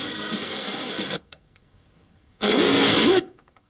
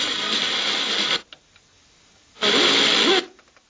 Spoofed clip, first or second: first